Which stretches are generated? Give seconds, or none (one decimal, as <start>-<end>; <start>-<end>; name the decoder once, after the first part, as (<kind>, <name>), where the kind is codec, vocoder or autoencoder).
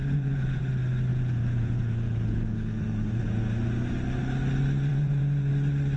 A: 0.0-0.6 (vocoder, Vocos); 1.1-3.4; 4.9-5.5